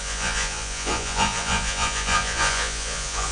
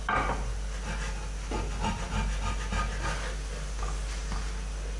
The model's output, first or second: first